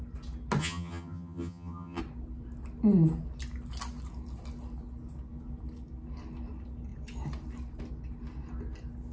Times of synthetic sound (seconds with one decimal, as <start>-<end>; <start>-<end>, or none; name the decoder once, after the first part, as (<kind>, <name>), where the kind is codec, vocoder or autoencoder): 0.6-2.0 (vocoder, HiFi-GAN)